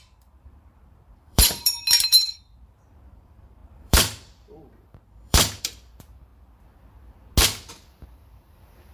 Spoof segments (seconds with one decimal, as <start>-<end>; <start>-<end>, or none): 0.0-6.3; 7.7-8.9